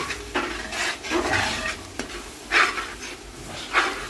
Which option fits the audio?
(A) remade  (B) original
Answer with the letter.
B